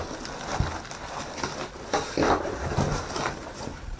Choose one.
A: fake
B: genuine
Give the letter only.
B